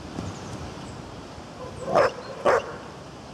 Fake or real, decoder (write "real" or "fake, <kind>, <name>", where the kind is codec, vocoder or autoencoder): fake, vocoder, BigVGAN v2